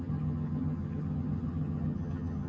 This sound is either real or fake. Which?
fake